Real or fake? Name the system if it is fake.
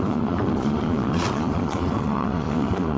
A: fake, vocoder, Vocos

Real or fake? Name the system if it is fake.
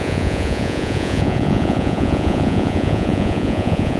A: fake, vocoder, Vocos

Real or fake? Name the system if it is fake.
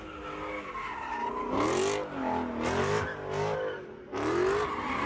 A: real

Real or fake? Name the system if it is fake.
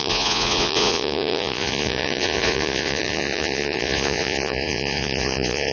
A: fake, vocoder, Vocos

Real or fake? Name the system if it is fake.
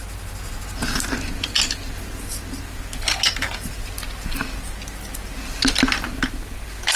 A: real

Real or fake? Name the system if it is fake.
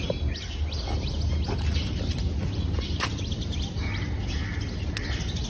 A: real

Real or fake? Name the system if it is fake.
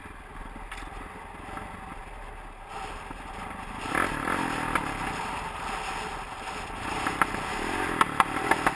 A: real